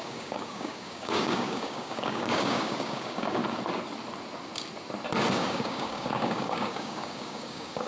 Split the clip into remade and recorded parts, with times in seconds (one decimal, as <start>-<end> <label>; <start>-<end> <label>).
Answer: 0.0-3.4 remade; 3.4-5.3 recorded; 5.3-7.9 remade